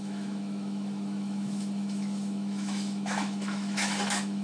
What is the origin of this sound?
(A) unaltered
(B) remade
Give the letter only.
B